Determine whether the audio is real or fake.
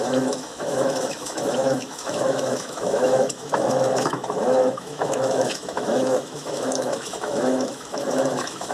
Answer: fake